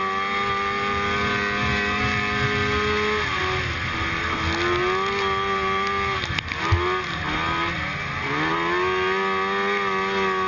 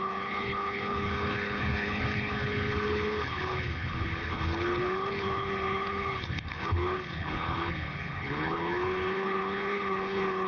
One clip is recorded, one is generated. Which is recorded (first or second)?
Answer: first